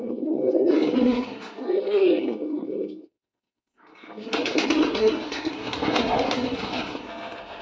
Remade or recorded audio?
remade